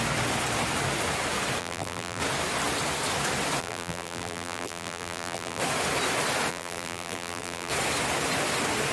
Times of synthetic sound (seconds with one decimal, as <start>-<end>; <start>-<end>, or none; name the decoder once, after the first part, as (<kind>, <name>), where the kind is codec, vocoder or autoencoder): 1.6-2.2 (vocoder, BigVGAN v2); 3.6-5.6; 6.5-7.7